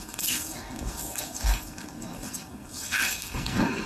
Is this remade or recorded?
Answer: remade